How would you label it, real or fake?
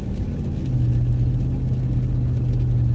real